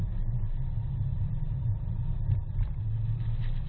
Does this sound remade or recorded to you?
recorded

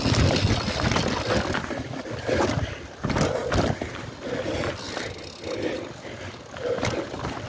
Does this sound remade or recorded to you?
recorded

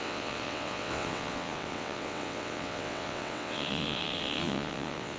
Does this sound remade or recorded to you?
remade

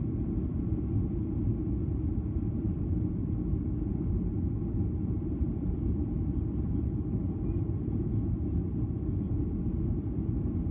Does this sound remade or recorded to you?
recorded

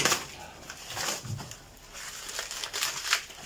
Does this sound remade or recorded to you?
recorded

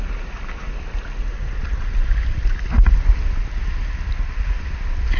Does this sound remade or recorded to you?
recorded